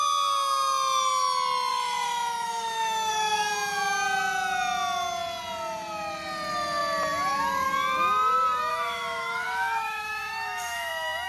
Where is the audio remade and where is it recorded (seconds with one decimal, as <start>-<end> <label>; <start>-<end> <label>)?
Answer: 0.0-1.7 recorded; 1.7-3.1 remade; 3.1-8.7 recorded; 8.7-10.9 remade; 10.9-11.3 recorded